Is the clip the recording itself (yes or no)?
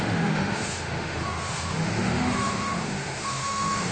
no